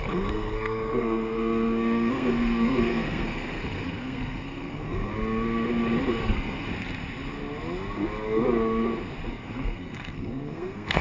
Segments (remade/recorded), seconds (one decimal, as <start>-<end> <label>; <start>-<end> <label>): 0.0-5.1 remade; 5.1-6.2 recorded; 6.2-6.7 remade; 6.7-9.3 recorded; 9.3-11.0 remade